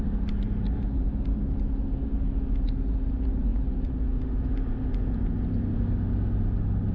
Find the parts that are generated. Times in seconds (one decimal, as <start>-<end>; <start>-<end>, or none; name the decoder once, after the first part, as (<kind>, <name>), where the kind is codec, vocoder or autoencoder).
none